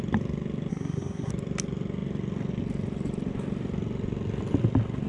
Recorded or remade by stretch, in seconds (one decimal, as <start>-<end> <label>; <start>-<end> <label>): 0.0-0.7 recorded; 0.7-1.3 remade; 1.3-5.1 recorded